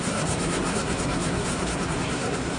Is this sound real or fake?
fake